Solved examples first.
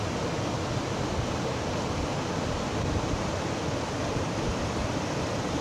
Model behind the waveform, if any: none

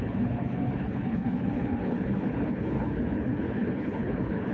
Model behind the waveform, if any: codec, HILCodec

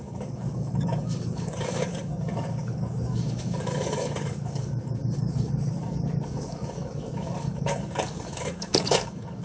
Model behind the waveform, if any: codec, DAC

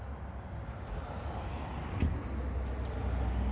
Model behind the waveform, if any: none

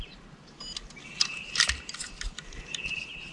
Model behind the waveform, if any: vocoder, BigVGAN v2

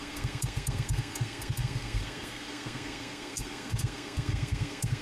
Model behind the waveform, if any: codec, SNAC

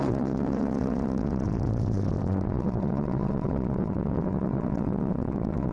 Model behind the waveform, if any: vocoder, WaveNeXt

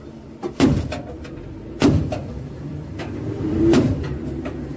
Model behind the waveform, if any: vocoder, BigVGAN v2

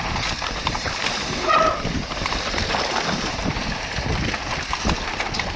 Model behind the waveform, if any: vocoder, BigVGAN v2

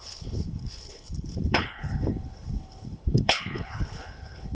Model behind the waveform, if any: codec, HILCodec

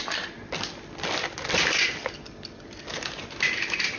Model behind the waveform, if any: none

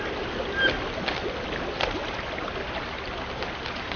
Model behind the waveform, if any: none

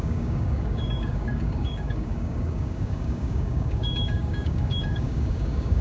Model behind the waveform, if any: codec, DAC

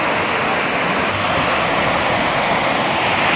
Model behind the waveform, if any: none